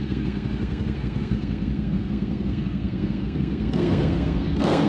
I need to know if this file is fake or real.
fake